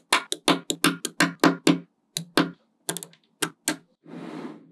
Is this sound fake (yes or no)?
no